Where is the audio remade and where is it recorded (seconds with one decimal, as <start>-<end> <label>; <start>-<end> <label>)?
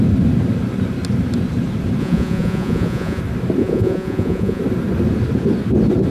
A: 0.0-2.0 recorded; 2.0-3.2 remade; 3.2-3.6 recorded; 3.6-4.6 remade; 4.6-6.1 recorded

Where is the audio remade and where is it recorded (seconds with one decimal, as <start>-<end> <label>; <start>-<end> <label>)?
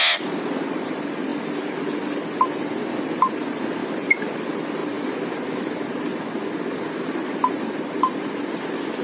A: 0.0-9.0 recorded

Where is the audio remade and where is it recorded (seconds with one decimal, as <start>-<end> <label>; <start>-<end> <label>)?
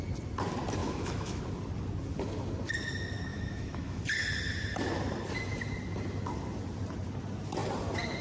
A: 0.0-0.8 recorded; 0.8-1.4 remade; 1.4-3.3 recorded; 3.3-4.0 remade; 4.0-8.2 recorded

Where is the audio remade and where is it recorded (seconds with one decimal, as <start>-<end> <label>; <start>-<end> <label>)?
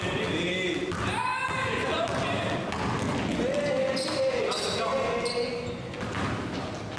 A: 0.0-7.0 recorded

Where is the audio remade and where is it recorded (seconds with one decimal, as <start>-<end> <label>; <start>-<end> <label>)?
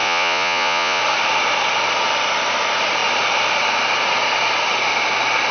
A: 0.0-1.0 remade; 1.0-5.5 recorded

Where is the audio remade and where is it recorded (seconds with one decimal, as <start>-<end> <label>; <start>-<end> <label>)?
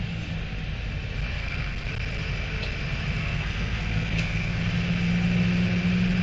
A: 0.0-1.3 recorded; 1.3-1.9 remade; 1.9-3.2 recorded; 3.2-4.6 remade; 4.6-6.2 recorded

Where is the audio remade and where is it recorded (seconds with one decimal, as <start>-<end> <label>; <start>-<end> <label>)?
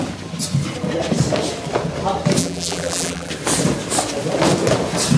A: 0.0-2.4 recorded; 2.4-3.3 remade; 3.3-5.2 recorded